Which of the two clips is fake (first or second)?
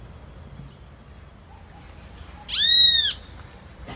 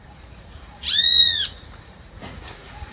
second